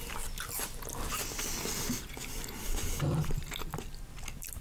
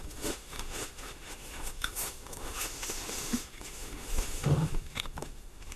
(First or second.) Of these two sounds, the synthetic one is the second